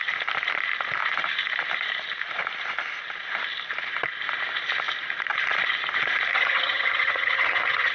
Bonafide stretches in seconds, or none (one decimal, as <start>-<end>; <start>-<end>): 0.0-6.3